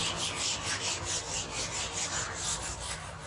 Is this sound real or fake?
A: real